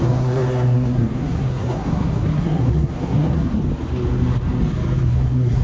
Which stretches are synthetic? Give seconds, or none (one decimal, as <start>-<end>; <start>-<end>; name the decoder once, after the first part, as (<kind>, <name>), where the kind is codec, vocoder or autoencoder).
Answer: 0.0-3.6 (codec, SNAC); 5.0-5.6